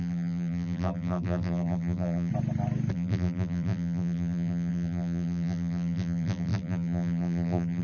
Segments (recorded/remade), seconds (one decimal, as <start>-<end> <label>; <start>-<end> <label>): 0.0-2.3 remade; 2.3-2.9 recorded; 2.9-7.8 remade